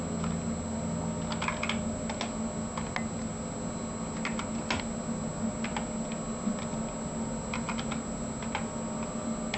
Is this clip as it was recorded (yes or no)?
yes